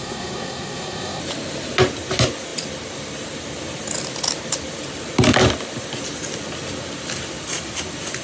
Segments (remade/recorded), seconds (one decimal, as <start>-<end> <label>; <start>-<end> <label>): 0.0-1.2 remade; 1.2-8.2 recorded